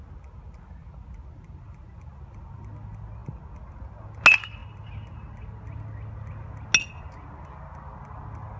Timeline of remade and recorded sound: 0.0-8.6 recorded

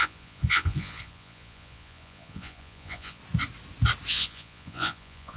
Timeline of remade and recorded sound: 0.0-3.2 remade; 3.2-4.1 recorded; 4.1-5.4 remade